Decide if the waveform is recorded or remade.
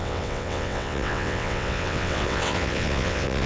remade